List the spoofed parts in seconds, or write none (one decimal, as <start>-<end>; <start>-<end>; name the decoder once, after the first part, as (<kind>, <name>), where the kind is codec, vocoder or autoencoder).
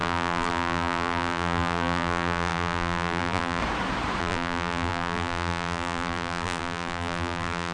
0.0-3.6 (vocoder, BigVGAN v2); 4.2-7.7